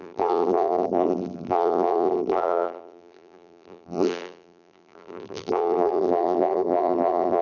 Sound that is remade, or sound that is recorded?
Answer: remade